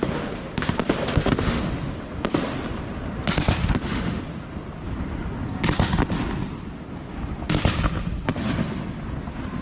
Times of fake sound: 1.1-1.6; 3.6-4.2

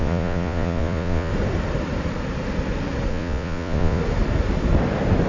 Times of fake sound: 0.0-1.3; 3.1-4.0

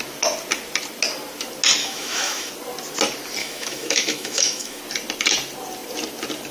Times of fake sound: 1.8-2.5; 3.4-4.8

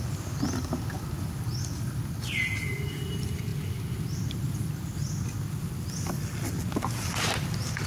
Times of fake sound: none

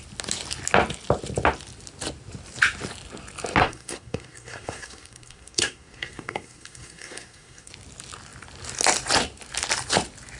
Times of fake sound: 3.6-7.7

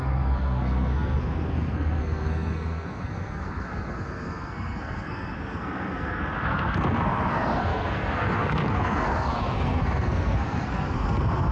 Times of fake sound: 0.0-11.5

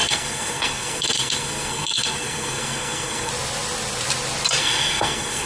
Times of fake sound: 0.0-3.3; 4.6-5.5